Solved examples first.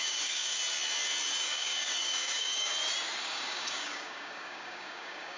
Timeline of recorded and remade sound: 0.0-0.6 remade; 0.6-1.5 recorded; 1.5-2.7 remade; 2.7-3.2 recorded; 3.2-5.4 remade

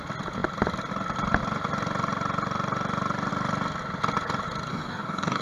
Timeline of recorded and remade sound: 0.0-4.7 recorded; 4.7-5.4 remade